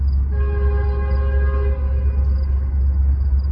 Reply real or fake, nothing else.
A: real